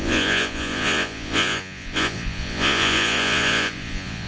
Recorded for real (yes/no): no